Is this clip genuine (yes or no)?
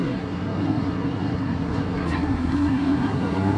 no